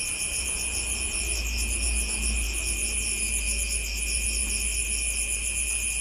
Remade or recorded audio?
recorded